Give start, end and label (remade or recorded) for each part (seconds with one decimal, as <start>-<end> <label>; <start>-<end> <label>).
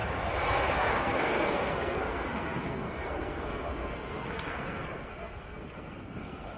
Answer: 0.0-0.7 recorded; 0.7-6.6 remade